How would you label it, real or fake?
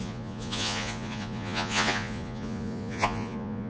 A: fake